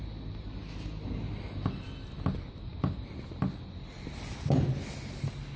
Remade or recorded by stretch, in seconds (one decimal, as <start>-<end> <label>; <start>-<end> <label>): 0.0-5.6 recorded